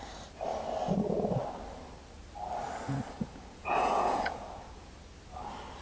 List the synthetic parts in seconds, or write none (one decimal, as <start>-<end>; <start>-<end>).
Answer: 3.2-4.9